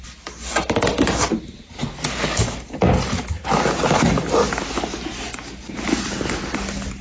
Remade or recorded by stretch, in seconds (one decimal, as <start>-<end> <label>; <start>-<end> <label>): 0.0-7.0 recorded